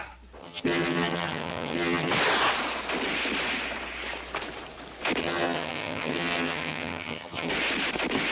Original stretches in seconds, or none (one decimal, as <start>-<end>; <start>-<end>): 0.0-0.4; 2.1-5.2; 7.5-8.3